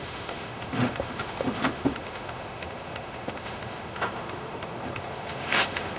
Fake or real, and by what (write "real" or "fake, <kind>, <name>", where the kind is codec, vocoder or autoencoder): fake, autoencoder, DAC-VAE